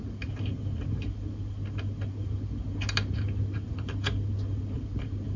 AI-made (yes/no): no